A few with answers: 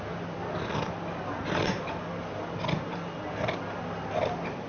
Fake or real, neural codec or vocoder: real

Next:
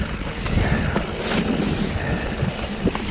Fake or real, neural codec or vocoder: real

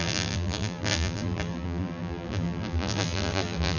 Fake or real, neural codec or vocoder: fake, vocoder, BigVGAN v2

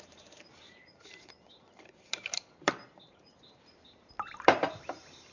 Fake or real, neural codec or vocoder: fake, vocoder, BigVGAN v2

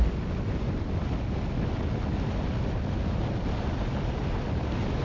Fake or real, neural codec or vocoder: real